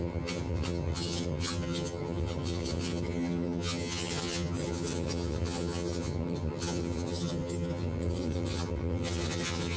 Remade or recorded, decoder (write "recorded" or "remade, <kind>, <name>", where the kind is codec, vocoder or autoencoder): remade, vocoder, HiFi-GAN